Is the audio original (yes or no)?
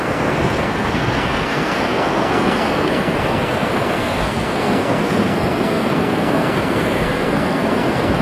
no